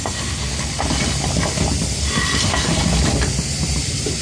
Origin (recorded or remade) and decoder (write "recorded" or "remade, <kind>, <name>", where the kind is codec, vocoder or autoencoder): recorded